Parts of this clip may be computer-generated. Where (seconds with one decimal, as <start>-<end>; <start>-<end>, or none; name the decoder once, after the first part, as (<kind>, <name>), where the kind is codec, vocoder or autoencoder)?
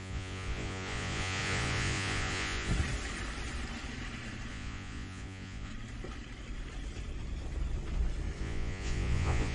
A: 0.0-2.7 (vocoder, Vocos); 4.5-5.7; 8.4-9.5